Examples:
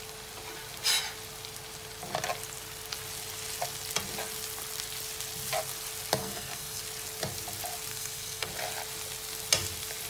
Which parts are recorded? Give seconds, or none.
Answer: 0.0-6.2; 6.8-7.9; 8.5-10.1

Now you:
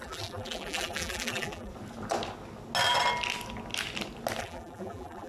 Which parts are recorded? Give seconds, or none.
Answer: 1.7-4.4

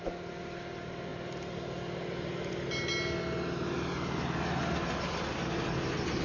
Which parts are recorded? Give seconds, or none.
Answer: 0.0-6.2

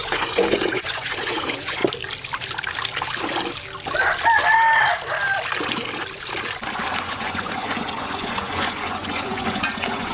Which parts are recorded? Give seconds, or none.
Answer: 1.8-7.0

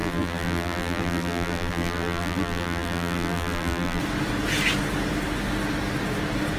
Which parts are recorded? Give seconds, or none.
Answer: 4.0-6.6

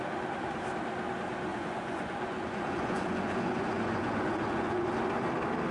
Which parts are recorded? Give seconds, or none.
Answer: 0.0-1.5; 4.9-5.7

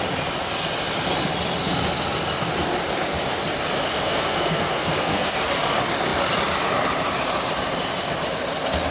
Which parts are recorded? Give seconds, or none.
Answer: 0.0-3.9; 5.4-8.9